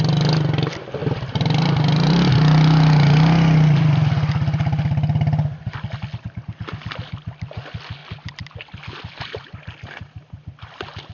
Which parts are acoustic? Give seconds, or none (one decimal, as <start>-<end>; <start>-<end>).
0.0-1.0; 2.3-8.0